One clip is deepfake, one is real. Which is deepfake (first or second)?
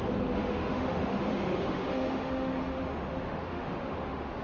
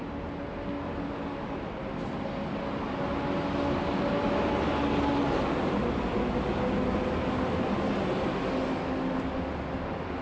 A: first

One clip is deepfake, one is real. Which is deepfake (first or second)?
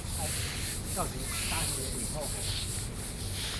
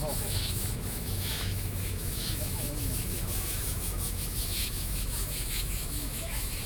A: second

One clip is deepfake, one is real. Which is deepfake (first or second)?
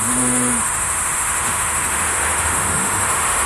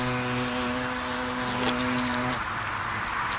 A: first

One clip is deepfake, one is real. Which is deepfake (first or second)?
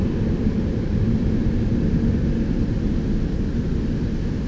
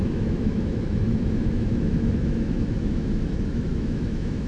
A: second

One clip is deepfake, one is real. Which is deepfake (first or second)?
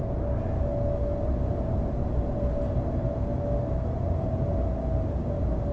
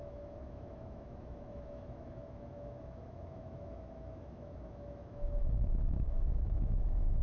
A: second